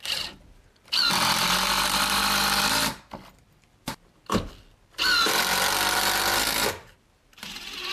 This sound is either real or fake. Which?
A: real